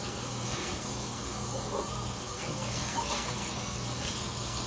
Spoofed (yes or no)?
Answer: yes